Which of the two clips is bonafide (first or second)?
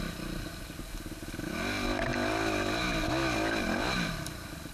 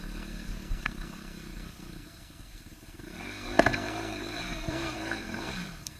first